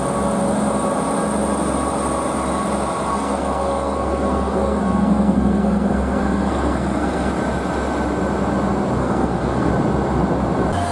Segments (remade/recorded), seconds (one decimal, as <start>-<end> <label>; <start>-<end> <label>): 0.0-3.1 recorded; 3.1-7.3 remade; 7.3-9.0 recorded; 9.0-9.7 remade; 9.7-10.9 recorded